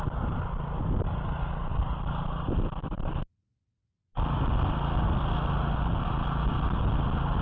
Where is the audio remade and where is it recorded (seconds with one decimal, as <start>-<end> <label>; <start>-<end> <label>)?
0.0-7.4 recorded